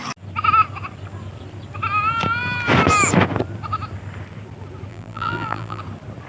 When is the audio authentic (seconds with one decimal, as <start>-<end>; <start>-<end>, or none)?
0.0-4.9; 5.8-6.3